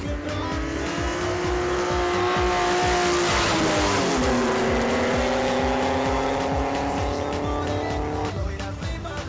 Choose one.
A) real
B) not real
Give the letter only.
A